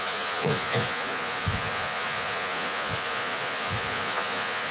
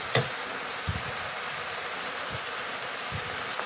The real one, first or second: second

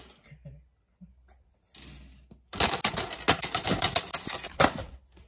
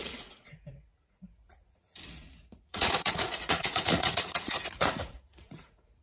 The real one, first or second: first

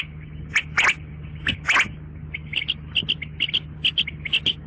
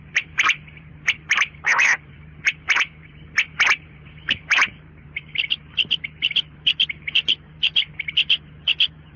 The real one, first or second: first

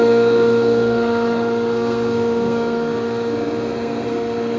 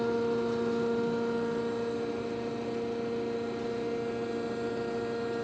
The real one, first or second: second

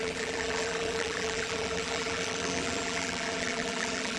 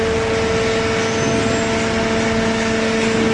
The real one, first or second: second